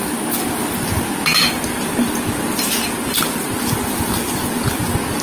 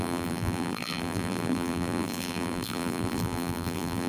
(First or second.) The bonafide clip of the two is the first